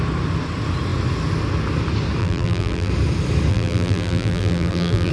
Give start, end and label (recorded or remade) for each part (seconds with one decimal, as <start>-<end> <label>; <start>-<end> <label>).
0.0-2.2 recorded; 2.2-2.9 remade; 2.9-3.5 recorded; 3.5-5.1 remade